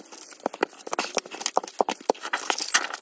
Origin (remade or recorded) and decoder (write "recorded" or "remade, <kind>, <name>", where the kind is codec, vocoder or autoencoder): recorded